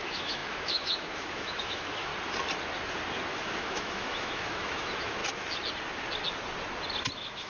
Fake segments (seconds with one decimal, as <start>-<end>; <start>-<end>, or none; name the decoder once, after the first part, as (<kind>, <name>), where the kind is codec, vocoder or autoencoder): 0.0-2.1 (autoencoder, DAC-VAE); 3.3-5.2; 7.1-7.5